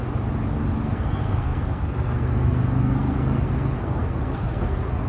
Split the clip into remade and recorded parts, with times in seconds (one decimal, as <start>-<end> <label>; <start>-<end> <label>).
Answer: 0.0-0.8 recorded; 0.8-5.1 remade